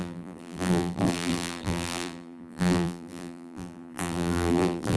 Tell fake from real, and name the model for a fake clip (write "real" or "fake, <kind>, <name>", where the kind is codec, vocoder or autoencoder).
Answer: fake, vocoder, BigVGAN v2